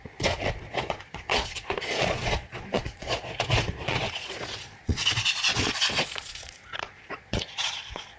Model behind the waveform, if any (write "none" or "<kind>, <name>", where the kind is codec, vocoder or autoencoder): vocoder, Vocos